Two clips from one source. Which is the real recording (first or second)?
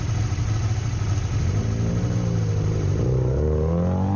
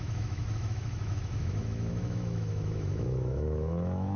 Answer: first